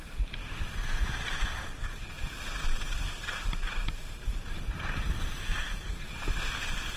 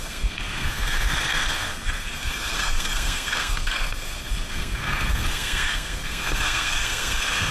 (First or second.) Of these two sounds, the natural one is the first